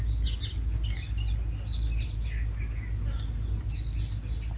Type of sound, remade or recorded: recorded